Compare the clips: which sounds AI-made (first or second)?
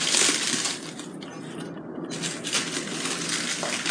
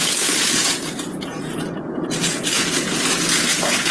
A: second